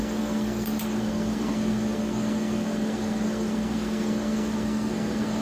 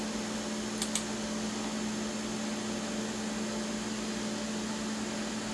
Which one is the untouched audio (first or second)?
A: second